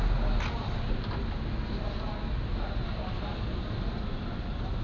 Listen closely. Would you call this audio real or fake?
real